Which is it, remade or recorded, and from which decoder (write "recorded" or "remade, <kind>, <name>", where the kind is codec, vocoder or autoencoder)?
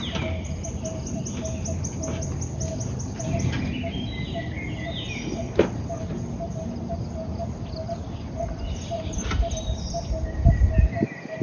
recorded